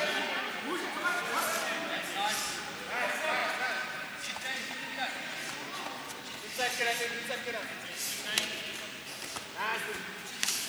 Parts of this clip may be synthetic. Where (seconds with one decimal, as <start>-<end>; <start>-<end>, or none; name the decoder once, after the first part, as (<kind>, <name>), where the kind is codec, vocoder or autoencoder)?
3.4-5.7 (vocoder, BigVGAN v2); 6.6-7.1; 9.7-10.7